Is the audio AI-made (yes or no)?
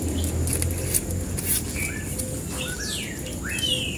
no